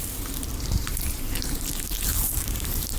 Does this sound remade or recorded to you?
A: remade